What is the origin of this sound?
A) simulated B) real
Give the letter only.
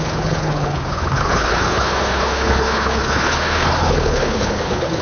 A